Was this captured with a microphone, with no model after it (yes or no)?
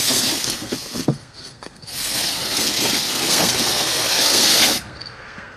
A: no